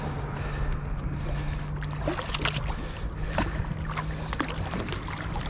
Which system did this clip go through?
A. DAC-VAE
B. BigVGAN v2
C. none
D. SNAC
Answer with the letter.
C